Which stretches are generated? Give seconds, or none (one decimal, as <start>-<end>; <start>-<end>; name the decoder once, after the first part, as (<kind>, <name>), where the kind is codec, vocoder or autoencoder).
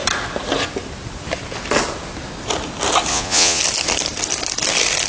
3.1-3.6 (vocoder, Vocos)